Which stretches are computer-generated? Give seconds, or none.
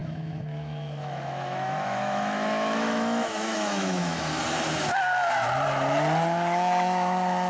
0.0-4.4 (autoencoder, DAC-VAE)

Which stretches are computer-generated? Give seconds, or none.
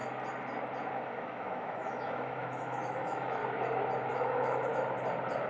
0.9-3.4 (autoencoder, DAC-VAE); 4.1-4.7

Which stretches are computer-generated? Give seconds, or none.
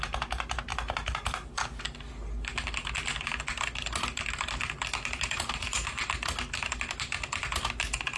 none